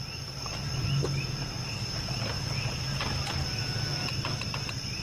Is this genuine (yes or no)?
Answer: yes